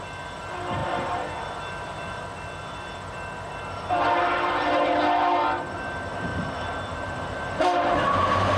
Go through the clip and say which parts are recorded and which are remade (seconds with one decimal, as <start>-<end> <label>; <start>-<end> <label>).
0.0-6.3 recorded; 6.3-8.6 remade

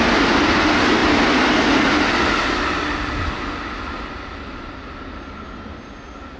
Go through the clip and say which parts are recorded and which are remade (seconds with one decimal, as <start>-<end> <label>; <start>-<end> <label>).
0.0-6.4 recorded

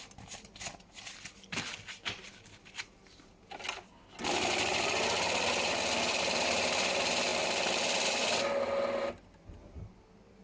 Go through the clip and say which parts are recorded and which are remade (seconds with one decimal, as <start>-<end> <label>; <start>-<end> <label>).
0.0-10.4 recorded

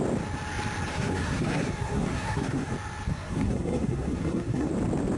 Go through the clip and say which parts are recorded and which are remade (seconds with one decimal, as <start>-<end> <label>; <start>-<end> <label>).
0.0-0.9 recorded; 0.9-2.7 remade; 2.7-3.1 recorded; 3.1-4.7 remade; 4.7-5.2 recorded

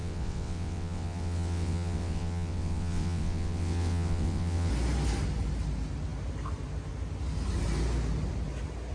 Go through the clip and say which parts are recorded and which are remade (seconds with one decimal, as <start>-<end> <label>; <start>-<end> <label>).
0.0-4.7 remade; 4.7-8.9 recorded

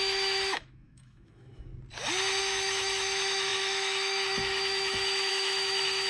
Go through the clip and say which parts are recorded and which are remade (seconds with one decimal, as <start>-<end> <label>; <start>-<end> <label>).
0.0-1.7 remade; 1.7-2.4 recorded; 2.4-6.1 remade

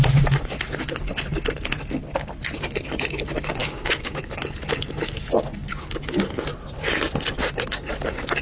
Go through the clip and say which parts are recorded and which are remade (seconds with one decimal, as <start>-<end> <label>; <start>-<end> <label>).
0.0-3.6 recorded; 3.6-4.2 remade; 4.2-8.4 recorded